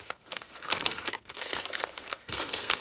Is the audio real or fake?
fake